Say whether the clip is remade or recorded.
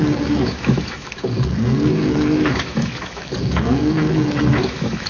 remade